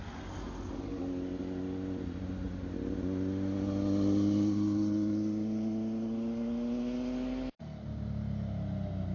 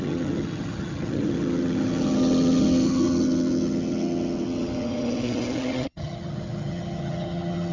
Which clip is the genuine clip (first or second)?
first